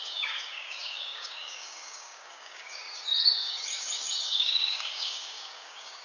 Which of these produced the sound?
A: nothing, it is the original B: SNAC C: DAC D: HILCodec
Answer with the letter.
C